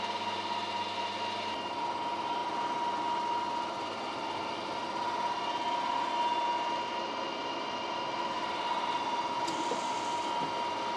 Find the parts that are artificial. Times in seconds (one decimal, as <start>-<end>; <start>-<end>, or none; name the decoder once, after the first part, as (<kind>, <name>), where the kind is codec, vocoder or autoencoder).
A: none